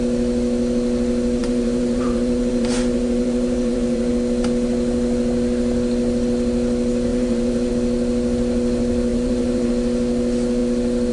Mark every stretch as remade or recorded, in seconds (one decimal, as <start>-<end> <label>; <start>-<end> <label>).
0.0-1.4 recorded; 1.4-4.1 remade; 4.1-7.1 recorded; 7.1-7.7 remade; 7.7-9.1 recorded; 9.1-9.7 remade; 9.7-11.1 recorded

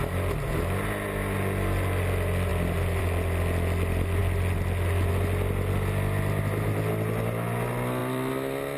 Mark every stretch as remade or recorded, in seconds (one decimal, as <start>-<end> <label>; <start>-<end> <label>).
0.0-8.0 recorded; 8.0-8.8 remade

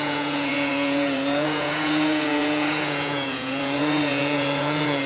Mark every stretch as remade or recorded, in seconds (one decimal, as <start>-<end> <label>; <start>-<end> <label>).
0.0-5.1 remade